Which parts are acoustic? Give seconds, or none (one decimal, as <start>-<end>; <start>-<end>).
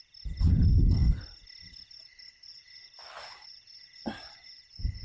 0.0-5.0